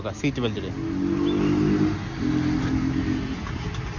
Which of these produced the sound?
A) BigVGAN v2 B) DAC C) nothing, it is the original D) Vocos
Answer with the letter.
C